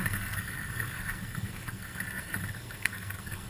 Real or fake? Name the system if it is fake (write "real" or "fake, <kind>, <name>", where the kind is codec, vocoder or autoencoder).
fake, codec, SNAC